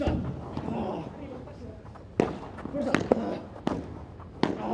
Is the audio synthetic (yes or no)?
no